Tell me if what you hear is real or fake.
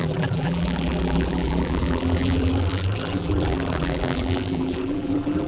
fake